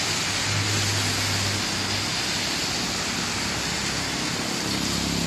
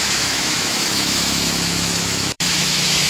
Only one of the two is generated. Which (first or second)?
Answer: second